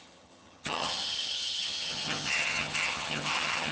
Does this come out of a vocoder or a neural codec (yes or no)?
yes